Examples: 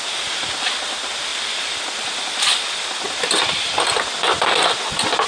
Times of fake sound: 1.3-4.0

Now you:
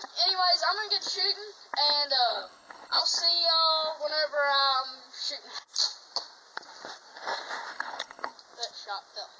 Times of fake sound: 2.3-3.0; 7.7-8.3

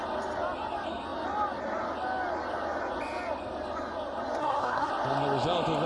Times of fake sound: 4.4-4.9